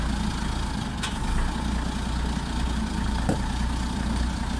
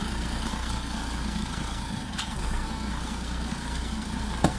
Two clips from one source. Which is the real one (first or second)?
first